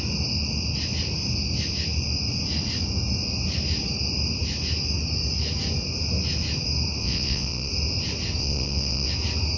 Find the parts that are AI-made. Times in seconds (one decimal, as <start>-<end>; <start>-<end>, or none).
7.0-7.7; 8.4-9.1